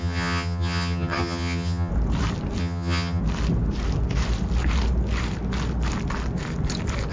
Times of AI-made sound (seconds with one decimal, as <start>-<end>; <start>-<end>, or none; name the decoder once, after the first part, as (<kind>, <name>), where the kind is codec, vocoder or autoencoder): 0.0-1.9 (vocoder, HiFi-GAN); 2.6-3.2